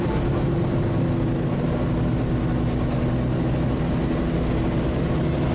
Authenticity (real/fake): real